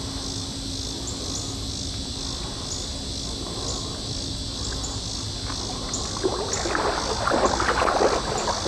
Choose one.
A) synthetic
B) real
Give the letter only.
B